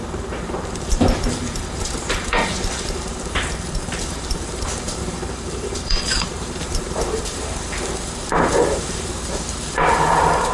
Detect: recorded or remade remade